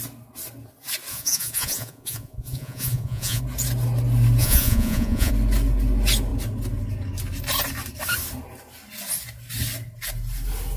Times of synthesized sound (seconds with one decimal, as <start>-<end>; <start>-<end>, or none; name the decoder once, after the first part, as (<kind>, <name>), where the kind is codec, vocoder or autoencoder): 1.1-3.4 (vocoder, Vocos); 4.4-5.3